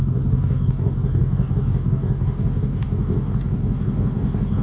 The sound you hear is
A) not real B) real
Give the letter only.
A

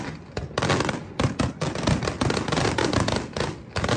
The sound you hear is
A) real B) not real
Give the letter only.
A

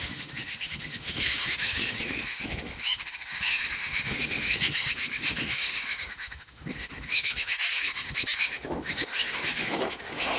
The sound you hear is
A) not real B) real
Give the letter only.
A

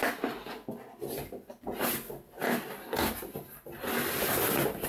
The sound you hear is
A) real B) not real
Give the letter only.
A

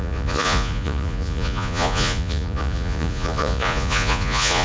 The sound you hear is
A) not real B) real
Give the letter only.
A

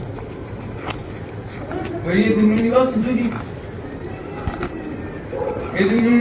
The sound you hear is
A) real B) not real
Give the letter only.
B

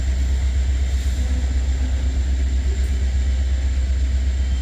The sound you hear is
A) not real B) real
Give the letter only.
B